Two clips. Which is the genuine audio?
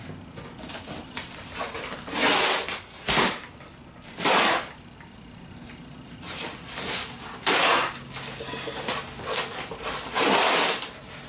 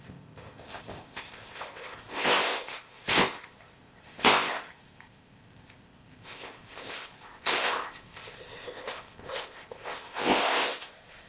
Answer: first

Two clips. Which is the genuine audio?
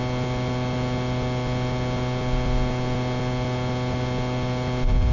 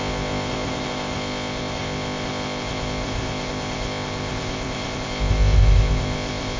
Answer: first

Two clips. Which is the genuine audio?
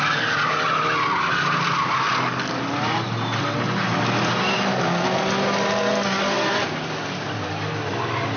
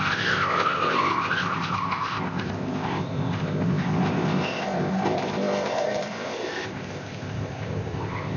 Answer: first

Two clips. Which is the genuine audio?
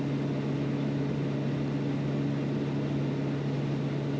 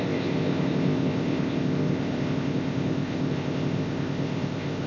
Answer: first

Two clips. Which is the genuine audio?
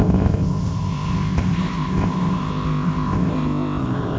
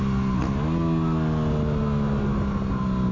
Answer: second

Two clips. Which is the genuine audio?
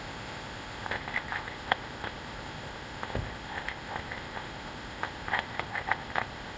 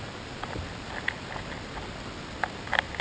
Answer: second